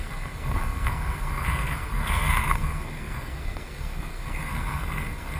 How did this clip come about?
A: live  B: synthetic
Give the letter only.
B